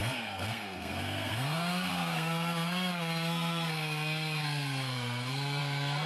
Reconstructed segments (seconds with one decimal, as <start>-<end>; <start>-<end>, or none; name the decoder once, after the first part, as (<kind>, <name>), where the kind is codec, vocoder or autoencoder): 0.0-6.1 (codec, SNAC)